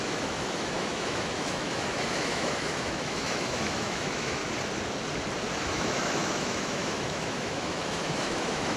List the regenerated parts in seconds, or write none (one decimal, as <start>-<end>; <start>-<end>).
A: 0.0-4.4; 5.6-8.8